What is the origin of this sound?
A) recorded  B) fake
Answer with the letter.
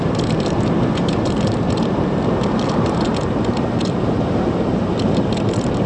B